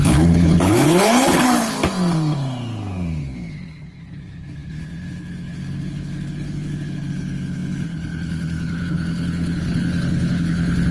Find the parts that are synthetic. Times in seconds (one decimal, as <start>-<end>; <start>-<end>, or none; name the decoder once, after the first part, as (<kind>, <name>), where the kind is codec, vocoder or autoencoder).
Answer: 0.0-1.8 (codec, HILCodec); 3.2-10.9